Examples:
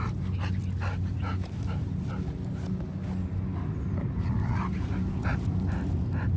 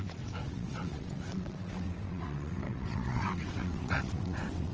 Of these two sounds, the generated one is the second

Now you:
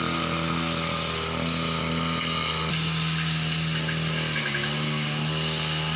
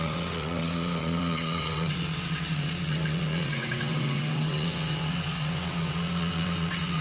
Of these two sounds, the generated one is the second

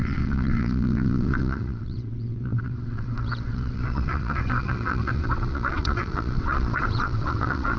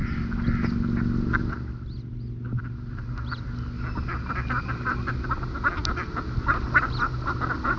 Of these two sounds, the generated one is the first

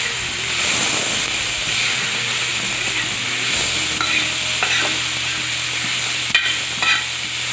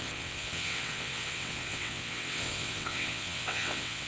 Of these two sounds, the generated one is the second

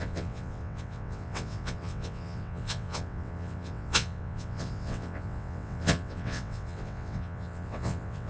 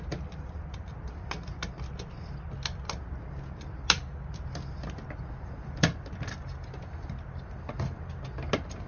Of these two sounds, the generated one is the first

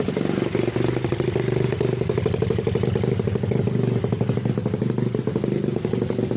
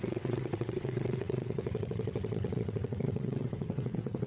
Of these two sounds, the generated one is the second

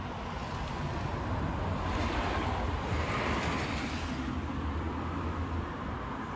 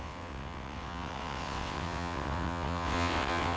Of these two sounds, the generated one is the second